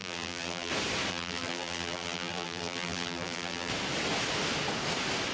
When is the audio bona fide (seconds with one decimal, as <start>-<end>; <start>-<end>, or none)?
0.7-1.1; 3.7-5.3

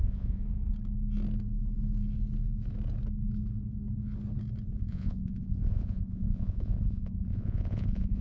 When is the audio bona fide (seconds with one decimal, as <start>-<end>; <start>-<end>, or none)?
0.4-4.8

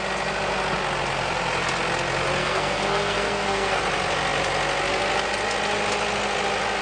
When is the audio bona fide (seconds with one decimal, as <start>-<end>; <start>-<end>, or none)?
0.0-2.4; 3.8-6.8

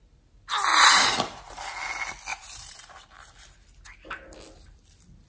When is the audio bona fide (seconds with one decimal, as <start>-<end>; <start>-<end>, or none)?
0.0-0.7; 1.6-2.3; 2.9-5.3

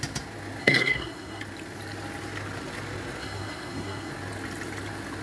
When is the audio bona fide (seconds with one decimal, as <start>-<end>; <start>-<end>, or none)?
0.0-0.6; 1.4-3.2; 4.1-5.2

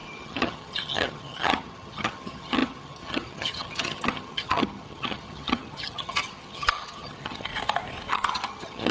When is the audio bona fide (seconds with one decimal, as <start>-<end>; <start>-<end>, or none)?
7.5-8.1

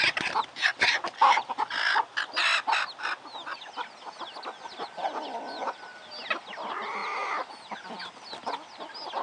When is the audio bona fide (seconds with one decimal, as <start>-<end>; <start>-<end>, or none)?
0.0-9.2